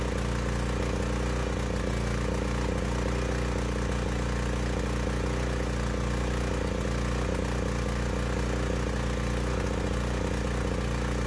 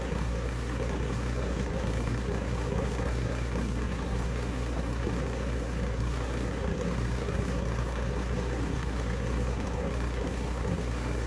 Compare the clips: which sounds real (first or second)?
first